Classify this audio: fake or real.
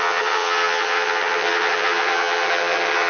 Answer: fake